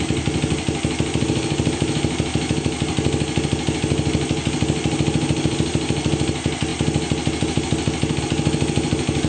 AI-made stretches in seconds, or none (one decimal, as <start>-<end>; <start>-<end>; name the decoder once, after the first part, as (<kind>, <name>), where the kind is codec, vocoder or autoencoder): none